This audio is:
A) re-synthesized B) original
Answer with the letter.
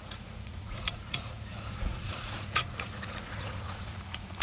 A